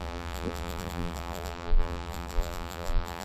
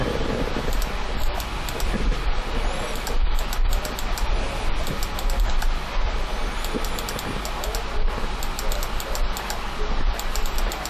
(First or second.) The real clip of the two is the second